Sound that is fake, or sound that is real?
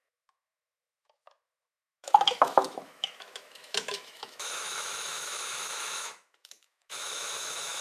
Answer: fake